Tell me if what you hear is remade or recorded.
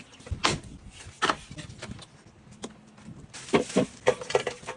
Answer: recorded